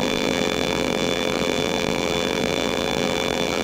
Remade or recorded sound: remade